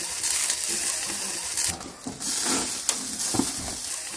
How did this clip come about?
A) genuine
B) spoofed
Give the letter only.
A